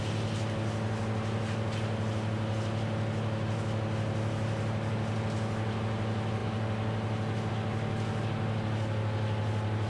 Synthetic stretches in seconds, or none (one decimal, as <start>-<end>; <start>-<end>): none